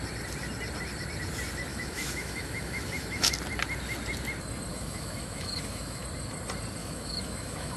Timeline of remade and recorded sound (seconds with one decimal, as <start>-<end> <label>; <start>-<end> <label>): 0.0-1.7 recorded; 1.7-3.3 remade; 3.3-4.7 recorded; 4.7-6.0 remade; 6.0-6.8 recorded; 6.8-7.8 remade